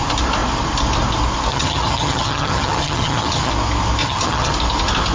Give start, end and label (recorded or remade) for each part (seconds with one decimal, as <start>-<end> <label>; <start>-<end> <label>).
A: 0.0-1.5 recorded; 1.5-3.5 remade; 3.5-4.0 recorded; 4.0-4.5 remade; 4.5-5.1 recorded